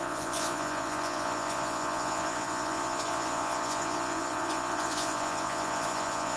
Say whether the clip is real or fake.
fake